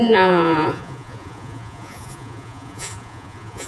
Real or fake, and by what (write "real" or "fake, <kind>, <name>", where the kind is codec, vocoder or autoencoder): fake, vocoder, Vocos